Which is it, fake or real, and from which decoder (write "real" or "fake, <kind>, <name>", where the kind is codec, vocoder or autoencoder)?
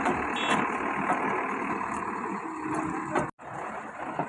real